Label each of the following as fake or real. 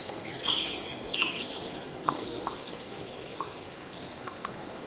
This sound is fake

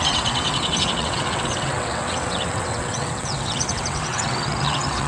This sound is fake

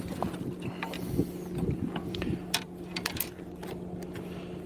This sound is real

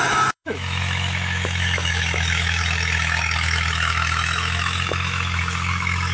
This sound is fake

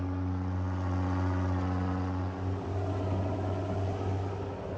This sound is real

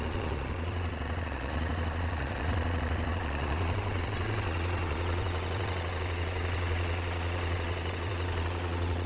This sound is fake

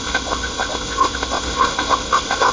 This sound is fake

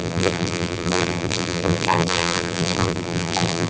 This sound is fake